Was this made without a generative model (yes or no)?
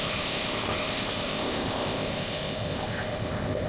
no